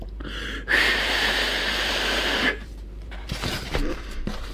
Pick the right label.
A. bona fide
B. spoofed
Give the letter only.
B